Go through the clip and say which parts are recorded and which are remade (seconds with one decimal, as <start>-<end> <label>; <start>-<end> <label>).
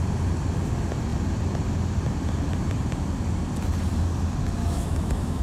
0.0-4.6 recorded; 4.6-5.4 remade